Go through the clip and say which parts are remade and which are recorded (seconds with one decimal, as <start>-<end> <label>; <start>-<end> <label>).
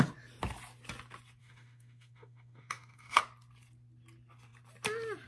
0.0-1.4 recorded; 1.4-3.2 remade; 3.2-5.3 recorded